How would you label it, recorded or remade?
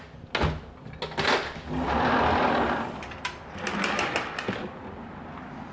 recorded